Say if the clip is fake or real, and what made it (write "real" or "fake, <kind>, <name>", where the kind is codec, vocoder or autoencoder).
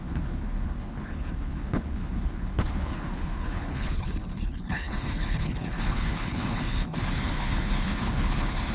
fake, codec, HILCodec